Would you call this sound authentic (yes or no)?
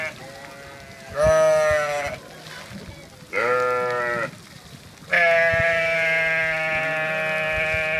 yes